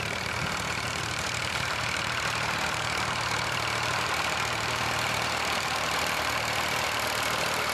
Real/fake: fake